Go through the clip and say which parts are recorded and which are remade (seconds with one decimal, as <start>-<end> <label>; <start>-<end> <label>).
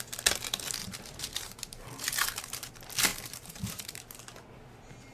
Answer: 0.0-0.8 recorded; 0.8-2.7 remade; 2.7-3.1 recorded; 3.1-4.1 remade; 4.1-5.1 recorded